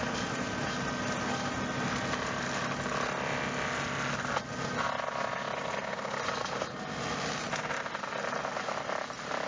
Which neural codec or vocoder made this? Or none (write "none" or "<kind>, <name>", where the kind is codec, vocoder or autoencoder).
none